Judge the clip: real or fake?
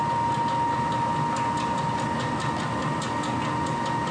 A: real